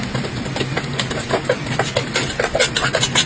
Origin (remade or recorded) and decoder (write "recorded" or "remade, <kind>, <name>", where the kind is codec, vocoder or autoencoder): recorded